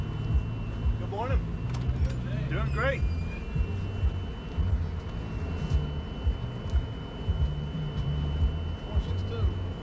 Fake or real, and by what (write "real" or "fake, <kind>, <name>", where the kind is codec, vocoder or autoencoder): real